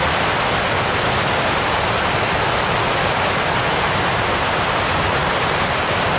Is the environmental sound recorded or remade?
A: recorded